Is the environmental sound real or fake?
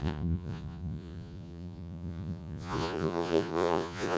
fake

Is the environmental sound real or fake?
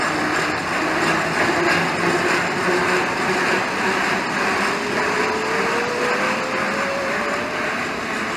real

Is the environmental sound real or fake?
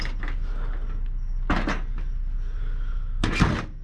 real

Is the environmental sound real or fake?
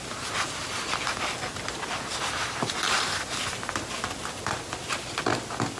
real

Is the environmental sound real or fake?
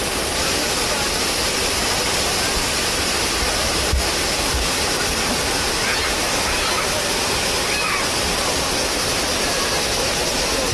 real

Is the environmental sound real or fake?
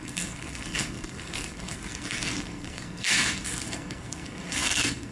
fake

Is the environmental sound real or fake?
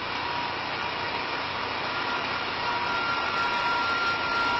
real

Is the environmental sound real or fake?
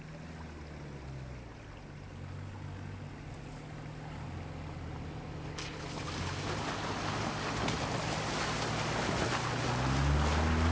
real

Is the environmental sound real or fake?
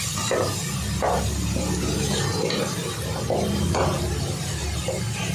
real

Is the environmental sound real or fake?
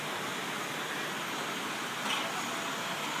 real